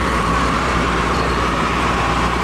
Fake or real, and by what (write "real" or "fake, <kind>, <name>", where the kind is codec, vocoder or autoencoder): fake, vocoder, BigVGAN v2